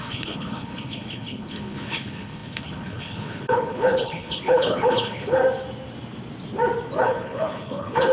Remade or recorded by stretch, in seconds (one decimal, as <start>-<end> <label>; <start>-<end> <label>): 0.0-5.4 remade; 5.4-7.0 recorded; 7.0-8.1 remade